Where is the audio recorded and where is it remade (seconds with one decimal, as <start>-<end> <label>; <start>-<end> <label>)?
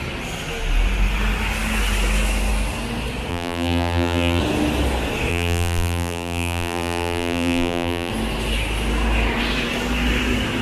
0.0-3.3 recorded; 3.3-4.4 remade; 4.4-5.3 recorded; 5.3-8.1 remade; 8.1-10.6 recorded